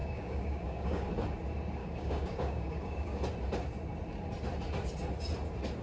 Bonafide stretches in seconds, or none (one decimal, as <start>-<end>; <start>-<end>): 1.1-1.8; 3.2-5.8